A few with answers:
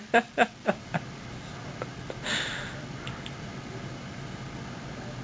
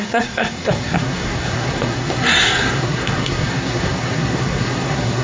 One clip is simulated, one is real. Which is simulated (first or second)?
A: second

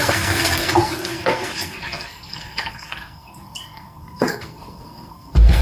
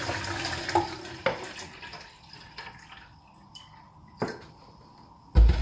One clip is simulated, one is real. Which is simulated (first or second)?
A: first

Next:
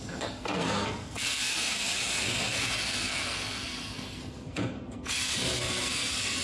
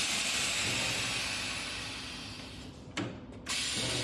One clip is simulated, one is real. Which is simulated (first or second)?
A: first